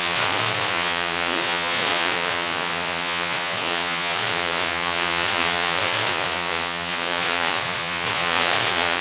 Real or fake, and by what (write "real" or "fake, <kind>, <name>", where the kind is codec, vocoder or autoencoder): fake, vocoder, Vocos